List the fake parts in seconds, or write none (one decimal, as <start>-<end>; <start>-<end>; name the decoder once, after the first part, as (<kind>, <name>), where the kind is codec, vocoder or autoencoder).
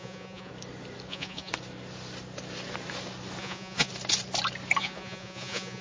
0.0-0.5 (vocoder, Vocos); 1.1-1.5; 3.4-3.9; 4.8-5.8